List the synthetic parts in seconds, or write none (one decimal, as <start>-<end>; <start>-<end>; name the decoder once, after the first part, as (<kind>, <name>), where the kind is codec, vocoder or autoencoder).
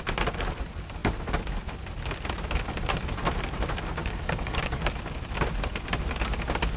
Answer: 4.0-4.8 (codec, DAC)